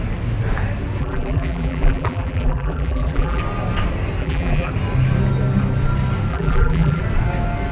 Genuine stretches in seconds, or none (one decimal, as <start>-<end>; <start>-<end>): 0.0-1.0; 3.4-4.2; 4.7-6.3; 7.0-7.7